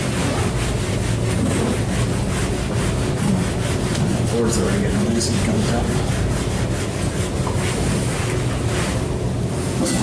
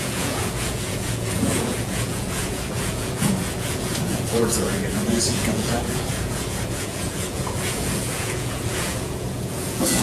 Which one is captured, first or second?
first